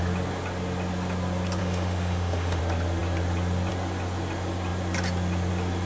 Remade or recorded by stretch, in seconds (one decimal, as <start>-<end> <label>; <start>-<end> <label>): 0.0-1.6 recorded; 1.6-2.6 remade; 2.6-5.9 recorded